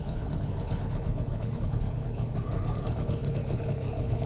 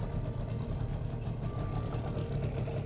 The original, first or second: second